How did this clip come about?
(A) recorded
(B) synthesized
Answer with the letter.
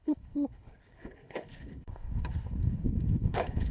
B